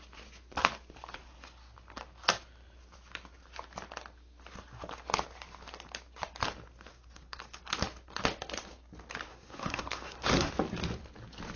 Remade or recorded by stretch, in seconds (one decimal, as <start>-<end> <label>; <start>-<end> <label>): 0.0-6.9 recorded; 6.9-7.6 remade; 7.6-9.3 recorded; 9.3-10.5 remade; 10.5-11.6 recorded